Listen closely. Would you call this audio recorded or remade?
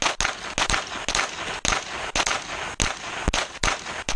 recorded